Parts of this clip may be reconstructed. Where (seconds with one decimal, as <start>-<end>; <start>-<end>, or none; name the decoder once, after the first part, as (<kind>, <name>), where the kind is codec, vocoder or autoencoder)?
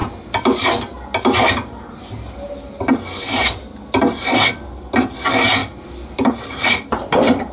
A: 5.6-6.3 (vocoder, BigVGAN v2)